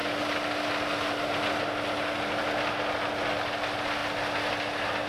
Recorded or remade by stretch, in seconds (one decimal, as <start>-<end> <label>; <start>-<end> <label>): 0.0-5.1 recorded